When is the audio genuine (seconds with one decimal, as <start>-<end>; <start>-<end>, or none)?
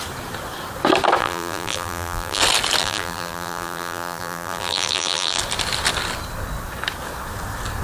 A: 0.0-1.2; 2.4-2.8; 5.4-7.8